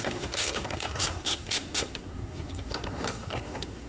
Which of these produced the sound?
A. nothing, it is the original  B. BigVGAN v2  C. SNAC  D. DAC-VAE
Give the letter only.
C